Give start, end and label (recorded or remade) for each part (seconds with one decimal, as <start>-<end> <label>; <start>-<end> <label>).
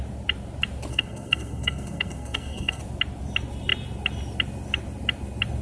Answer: 0.0-0.9 recorded; 0.9-2.8 remade; 2.8-5.6 recorded